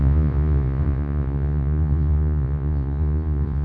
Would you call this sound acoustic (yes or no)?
no